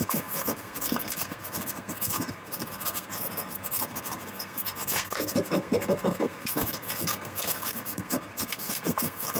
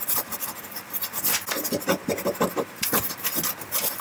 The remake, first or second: first